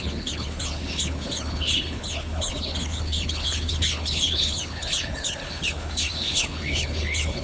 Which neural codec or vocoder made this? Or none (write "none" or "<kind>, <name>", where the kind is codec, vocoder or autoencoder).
codec, HILCodec